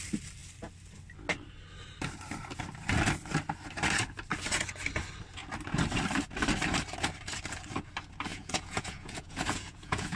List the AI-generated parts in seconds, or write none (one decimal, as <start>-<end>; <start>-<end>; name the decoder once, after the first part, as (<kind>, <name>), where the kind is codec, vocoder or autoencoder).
8.3-10.2 (vocoder, Vocos)